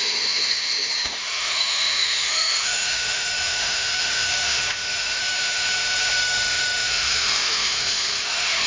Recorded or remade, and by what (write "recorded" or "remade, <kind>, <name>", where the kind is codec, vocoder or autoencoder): remade, autoencoder, DAC-VAE